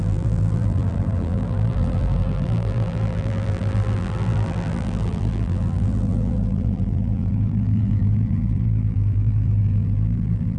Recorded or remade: remade